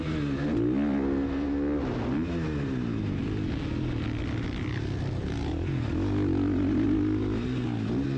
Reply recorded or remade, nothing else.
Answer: recorded